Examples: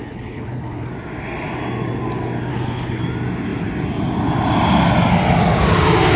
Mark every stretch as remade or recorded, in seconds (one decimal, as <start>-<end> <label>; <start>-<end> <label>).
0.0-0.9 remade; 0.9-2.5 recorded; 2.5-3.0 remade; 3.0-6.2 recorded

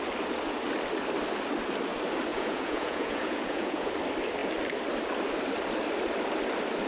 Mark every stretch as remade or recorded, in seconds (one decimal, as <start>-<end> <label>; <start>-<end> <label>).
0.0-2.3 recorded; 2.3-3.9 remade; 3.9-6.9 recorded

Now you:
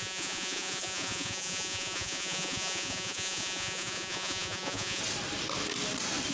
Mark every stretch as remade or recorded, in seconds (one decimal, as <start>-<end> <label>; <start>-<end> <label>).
0.0-5.0 remade; 5.0-6.3 recorded